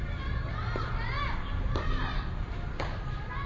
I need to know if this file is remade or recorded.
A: recorded